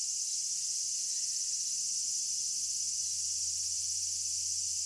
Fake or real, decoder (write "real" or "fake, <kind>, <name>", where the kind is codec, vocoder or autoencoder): real